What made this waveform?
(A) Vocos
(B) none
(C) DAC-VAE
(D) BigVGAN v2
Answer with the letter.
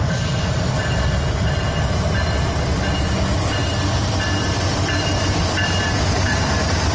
D